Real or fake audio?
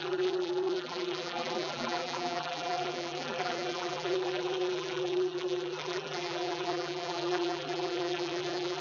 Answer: fake